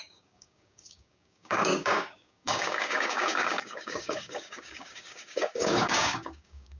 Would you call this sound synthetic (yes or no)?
yes